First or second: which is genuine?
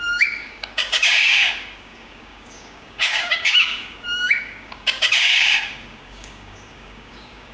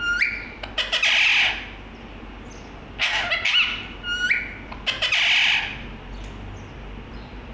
second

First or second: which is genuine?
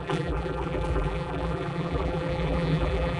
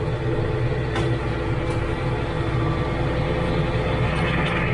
second